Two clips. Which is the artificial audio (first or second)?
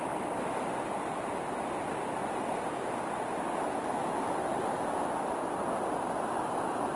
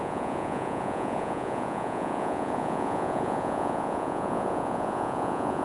second